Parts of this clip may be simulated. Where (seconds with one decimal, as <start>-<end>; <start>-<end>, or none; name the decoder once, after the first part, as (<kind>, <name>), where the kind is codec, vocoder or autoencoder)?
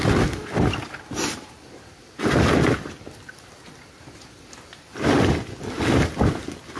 none